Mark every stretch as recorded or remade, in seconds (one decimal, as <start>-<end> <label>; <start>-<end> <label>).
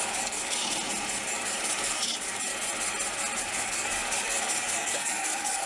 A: 0.0-0.6 remade; 0.6-1.3 recorded; 1.3-2.5 remade; 2.5-3.4 recorded; 3.4-5.7 remade